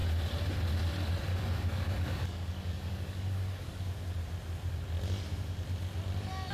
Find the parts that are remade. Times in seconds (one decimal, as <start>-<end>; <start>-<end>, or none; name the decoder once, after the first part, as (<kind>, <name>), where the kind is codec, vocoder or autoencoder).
1.3-3.8 (codec, DAC)